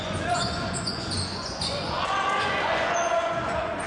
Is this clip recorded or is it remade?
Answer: remade